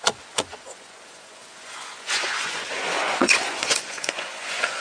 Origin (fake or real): fake